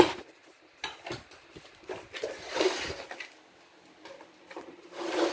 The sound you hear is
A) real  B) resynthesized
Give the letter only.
A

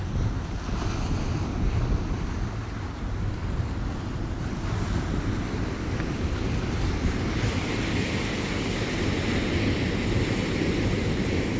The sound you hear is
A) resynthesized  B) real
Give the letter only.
B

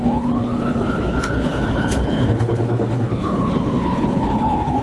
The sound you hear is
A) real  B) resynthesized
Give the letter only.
B